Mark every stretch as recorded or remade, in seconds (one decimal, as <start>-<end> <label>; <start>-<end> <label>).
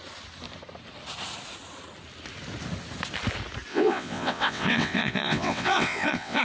0.0-3.7 recorded; 3.7-6.4 remade